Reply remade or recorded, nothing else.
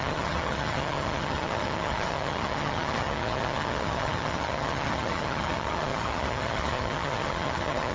remade